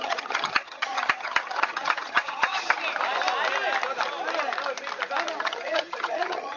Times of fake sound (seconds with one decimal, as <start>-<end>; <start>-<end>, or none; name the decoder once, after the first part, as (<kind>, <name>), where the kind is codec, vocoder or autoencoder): 0.0-2.8 (vocoder, HiFi-GAN); 5.4-6.6